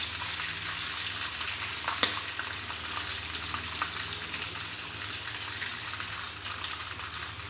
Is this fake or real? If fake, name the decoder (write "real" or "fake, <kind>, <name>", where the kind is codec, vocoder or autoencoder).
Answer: real